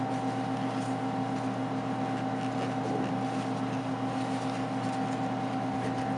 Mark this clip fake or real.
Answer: real